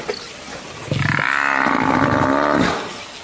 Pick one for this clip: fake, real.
real